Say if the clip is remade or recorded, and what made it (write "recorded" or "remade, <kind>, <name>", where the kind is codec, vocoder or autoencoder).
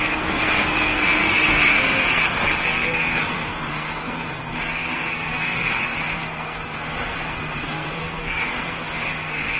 remade, codec, SNAC